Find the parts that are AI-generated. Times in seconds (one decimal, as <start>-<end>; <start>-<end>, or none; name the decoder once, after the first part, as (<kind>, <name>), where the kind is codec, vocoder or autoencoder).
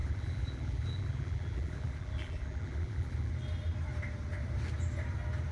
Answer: 0.0-3.3 (vocoder, BigVGAN v2)